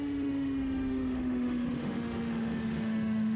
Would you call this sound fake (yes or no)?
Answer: yes